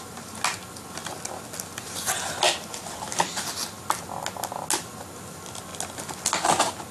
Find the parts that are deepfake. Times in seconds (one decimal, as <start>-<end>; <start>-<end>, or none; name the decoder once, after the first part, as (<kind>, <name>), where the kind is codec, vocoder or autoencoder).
none